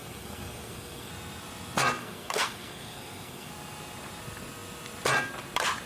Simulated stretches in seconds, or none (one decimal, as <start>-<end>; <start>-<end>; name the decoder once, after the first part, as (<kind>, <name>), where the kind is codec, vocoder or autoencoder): 0.0-1.1 (codec, SNAC); 2.0-3.5